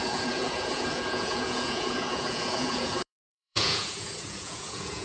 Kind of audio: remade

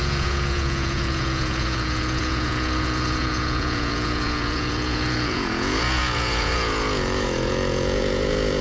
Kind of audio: remade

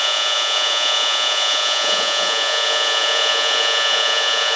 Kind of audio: remade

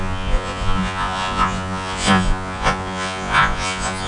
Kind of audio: remade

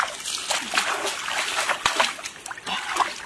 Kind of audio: recorded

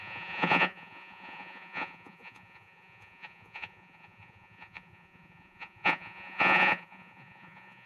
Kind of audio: remade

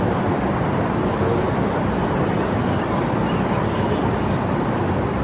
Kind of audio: recorded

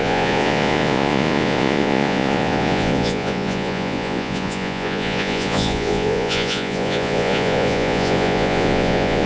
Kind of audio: remade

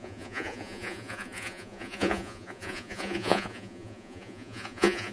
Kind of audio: remade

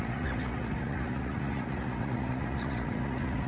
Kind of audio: remade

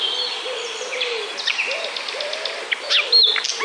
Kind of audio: recorded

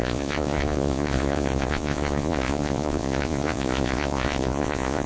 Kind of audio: remade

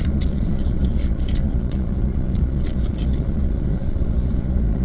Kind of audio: remade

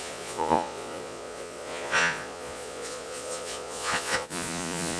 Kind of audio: remade